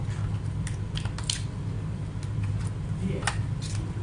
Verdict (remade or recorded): recorded